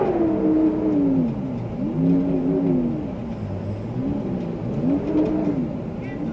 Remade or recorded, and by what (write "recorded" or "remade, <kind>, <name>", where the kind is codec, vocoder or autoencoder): recorded